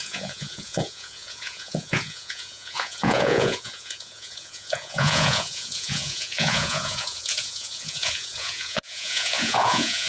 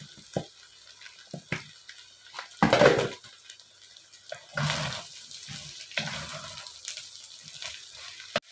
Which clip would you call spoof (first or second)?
first